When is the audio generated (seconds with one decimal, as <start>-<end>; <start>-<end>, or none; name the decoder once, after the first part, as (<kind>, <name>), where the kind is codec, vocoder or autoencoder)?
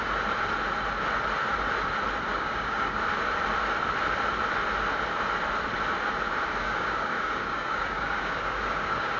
2.3-3.0 (codec, DAC); 6.6-9.2